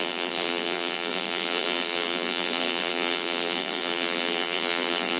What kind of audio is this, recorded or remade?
remade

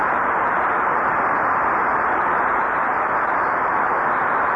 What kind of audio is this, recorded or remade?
remade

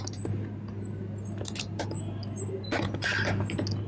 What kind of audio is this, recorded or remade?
recorded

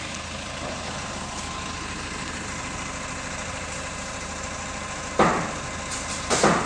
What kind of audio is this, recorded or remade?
recorded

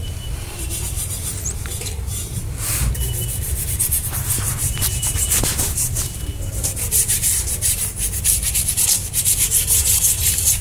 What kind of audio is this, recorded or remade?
remade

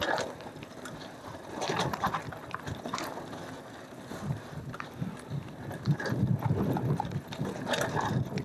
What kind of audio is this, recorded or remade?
recorded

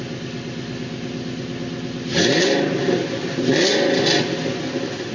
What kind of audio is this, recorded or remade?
recorded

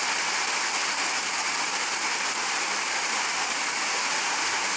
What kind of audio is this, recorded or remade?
remade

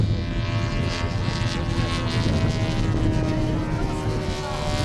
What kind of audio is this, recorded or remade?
recorded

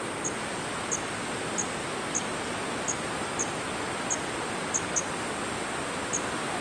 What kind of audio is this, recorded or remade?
recorded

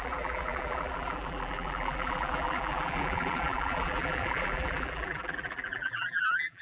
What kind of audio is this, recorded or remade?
remade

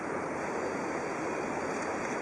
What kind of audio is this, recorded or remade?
recorded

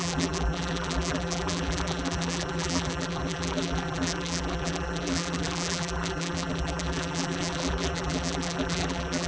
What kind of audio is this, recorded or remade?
remade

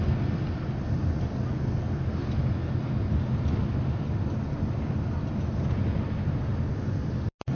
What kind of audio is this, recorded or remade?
recorded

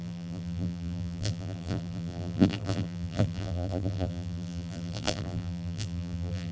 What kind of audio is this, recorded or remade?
remade